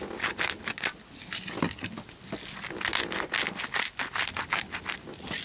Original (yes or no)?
yes